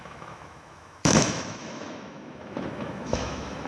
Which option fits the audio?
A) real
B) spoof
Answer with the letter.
B